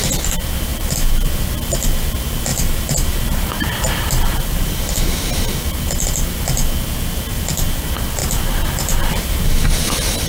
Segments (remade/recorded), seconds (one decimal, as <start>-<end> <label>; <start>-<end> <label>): 0.0-0.7 recorded; 0.7-1.3 remade; 1.3-2.5 recorded; 2.5-4.9 remade; 4.9-8.2 recorded; 8.2-10.3 remade